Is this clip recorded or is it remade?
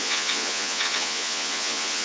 remade